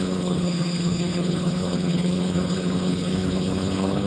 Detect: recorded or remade remade